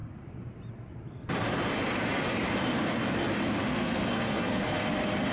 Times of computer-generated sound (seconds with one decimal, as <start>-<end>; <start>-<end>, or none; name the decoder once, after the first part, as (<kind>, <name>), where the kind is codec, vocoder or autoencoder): 3.7-4.6 (codec, SNAC)